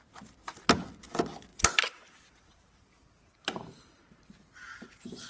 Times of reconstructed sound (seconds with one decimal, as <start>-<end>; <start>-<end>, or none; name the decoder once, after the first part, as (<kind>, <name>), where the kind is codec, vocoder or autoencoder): 1.5-4.2 (vocoder, BigVGAN v2)